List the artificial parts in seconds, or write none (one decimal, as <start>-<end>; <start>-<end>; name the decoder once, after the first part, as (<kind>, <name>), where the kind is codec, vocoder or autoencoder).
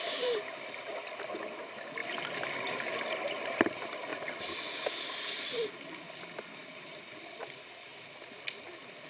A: none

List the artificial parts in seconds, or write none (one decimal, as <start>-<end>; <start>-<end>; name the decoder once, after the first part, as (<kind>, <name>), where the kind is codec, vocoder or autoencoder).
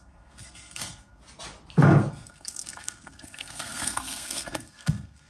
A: 0.0-1.2 (codec, SNAC); 2.1-5.3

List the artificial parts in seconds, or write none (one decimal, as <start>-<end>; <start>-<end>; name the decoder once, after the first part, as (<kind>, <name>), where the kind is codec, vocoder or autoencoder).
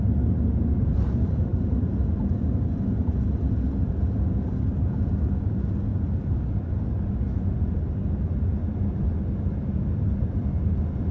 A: none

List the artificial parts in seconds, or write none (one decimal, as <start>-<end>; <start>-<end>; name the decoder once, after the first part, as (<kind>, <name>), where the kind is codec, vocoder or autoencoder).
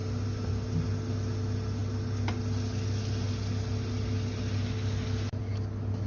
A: none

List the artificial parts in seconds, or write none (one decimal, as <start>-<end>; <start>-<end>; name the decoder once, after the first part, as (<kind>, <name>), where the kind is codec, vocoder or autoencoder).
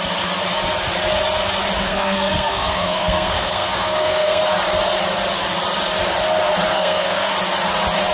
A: 1.9-4.4 (codec, SNAC); 6.7-7.3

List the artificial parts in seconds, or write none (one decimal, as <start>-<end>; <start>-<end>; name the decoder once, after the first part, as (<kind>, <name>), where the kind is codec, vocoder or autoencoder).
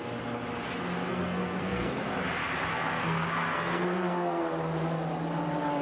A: 1.1-2.0 (codec, SNAC); 2.7-4.4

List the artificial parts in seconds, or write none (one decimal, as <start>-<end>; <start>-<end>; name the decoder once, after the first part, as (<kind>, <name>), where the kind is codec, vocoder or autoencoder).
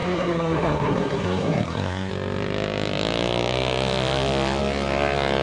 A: 0.0-2.1 (codec, SNAC)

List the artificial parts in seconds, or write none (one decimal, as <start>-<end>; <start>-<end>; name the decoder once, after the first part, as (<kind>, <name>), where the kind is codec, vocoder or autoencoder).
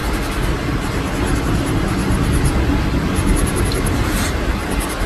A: none